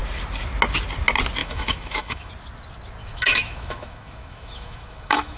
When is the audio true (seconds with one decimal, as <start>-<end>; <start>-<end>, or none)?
0.0-1.4; 2.3-3.0